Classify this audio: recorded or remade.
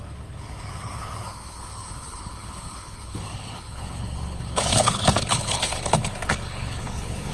remade